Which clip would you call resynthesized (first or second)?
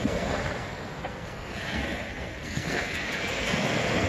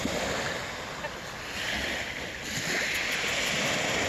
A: first